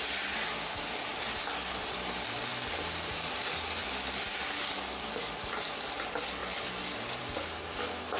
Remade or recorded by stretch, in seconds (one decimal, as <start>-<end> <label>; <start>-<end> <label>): 0.0-1.1 recorded; 1.1-1.7 remade; 1.7-8.2 recorded